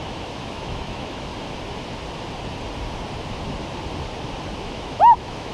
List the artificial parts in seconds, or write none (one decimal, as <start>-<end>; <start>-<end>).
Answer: 0.0-1.3; 4.6-5.5